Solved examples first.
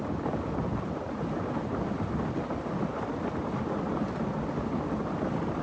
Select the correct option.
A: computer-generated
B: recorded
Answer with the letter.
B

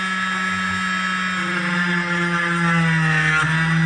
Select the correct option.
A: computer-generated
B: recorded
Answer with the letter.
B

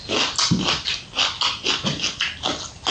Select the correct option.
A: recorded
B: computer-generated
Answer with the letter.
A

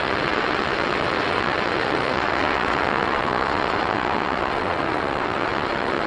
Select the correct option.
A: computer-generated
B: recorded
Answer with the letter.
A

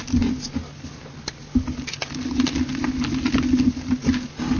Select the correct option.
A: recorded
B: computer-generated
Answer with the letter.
A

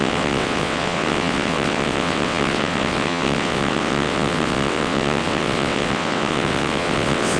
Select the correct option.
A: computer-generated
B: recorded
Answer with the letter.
A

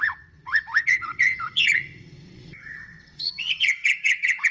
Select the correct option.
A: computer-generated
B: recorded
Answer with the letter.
A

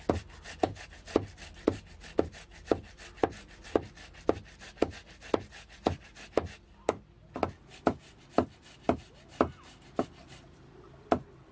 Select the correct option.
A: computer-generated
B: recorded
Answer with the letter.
B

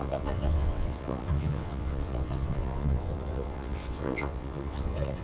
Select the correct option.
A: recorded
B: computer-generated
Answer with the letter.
B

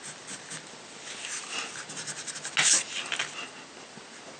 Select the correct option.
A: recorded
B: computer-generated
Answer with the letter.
A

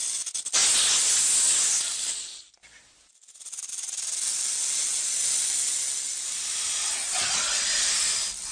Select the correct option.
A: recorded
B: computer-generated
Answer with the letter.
A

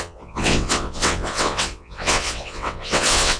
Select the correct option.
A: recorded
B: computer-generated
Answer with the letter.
B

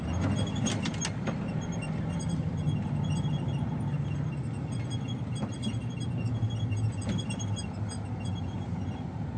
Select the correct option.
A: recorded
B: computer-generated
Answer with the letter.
A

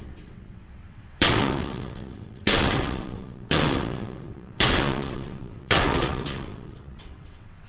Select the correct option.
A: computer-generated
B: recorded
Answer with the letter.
A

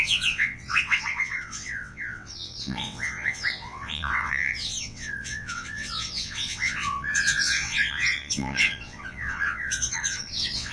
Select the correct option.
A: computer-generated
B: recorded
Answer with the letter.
A